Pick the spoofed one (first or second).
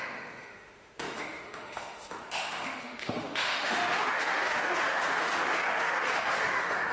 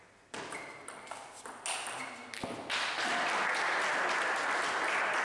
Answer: first